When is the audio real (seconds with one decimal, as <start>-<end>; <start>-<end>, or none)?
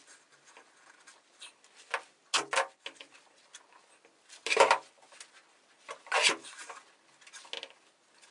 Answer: 0.0-8.3